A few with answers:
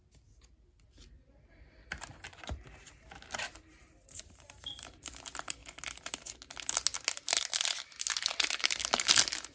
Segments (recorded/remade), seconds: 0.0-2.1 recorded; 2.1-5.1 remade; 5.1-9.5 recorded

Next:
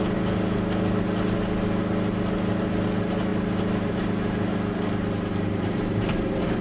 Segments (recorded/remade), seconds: 0.0-5.3 recorded; 5.3-6.6 remade

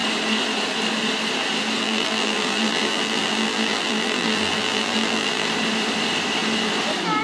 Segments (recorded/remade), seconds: 0.0-1.8 recorded; 1.8-5.5 remade; 5.5-7.2 recorded

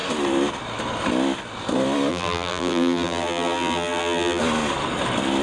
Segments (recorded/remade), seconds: 0.0-2.1 recorded; 2.1-4.4 remade; 4.4-5.4 recorded

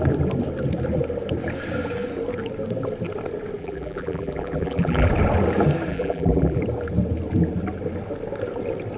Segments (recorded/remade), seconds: 0.0-3.6 recorded; 3.6-5.1 remade; 5.1-5.9 recorded; 5.9-6.6 remade; 6.6-9.0 recorded

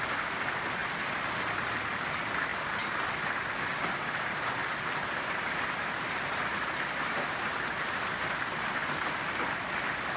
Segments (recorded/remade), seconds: 0.0-6.5 recorded; 6.5-7.5 remade; 7.5-8.8 recorded; 8.8-9.4 remade; 9.4-10.2 recorded